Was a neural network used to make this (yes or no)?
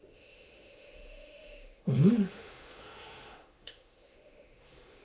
yes